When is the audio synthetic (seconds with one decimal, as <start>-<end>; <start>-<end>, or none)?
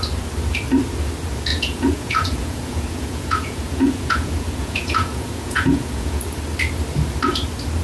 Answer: 1.5-6.2